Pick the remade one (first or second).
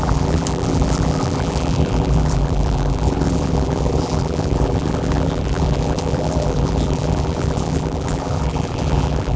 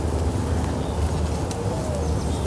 first